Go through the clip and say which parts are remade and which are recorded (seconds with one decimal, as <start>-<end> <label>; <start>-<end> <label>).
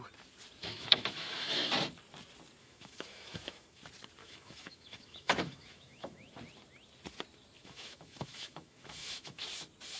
0.0-0.6 recorded; 0.6-1.7 remade; 1.7-2.6 recorded; 2.6-3.8 remade; 3.8-4.2 recorded; 4.2-6.3 remade; 6.3-7.6 recorded; 7.6-9.4 remade; 9.4-10.0 recorded